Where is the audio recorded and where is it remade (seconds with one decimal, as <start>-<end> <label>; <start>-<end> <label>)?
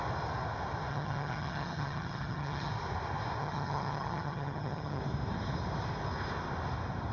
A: 0.0-0.9 recorded; 0.9-2.7 remade; 2.7-3.4 recorded; 3.4-5.0 remade; 5.0-7.1 recorded